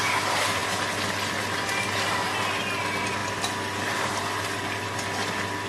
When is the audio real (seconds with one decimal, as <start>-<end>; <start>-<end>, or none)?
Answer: 0.0-5.7